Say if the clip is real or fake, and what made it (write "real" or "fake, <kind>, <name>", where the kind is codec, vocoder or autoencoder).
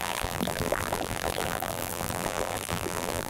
fake, vocoder, BigVGAN v2